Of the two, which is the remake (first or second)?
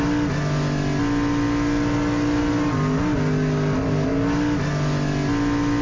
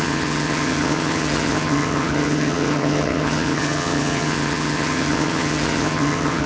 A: second